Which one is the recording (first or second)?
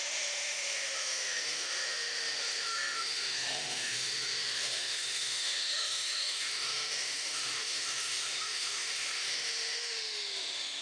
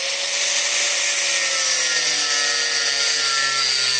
second